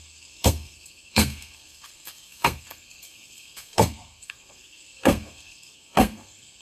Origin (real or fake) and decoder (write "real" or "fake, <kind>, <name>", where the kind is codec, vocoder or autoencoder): fake, codec, SNAC